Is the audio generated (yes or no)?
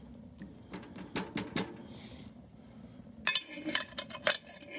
no